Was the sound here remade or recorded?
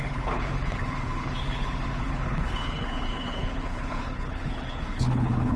remade